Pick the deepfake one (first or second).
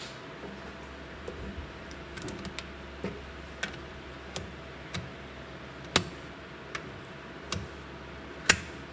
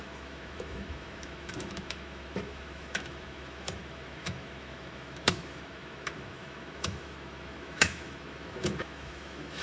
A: second